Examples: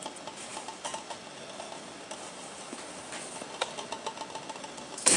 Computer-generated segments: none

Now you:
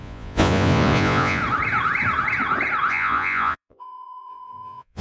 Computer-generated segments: 0.0-1.4; 2.9-5.0

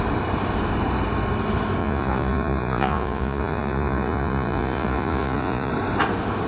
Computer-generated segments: 1.8-5.7

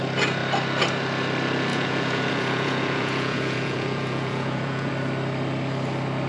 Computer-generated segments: 1.7-4.9

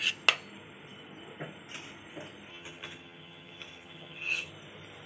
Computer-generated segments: 2.5-4.5

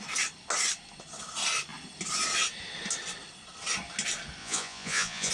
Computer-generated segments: 4.4-5.3

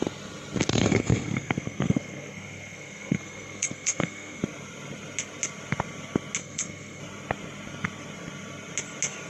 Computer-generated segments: 0.7-4.4; 6.4-7.0

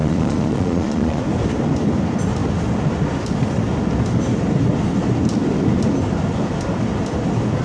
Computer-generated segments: 0.0-1.2